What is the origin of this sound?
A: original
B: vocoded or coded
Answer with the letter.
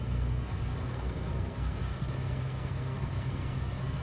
B